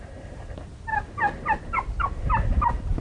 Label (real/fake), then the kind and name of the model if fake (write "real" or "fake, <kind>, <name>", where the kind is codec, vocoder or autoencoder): real